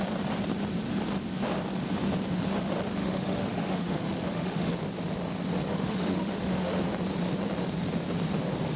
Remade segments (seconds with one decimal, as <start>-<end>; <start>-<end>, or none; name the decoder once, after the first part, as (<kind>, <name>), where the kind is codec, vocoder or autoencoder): 3.0-4.7 (autoencoder, DAC-VAE); 5.7-6.8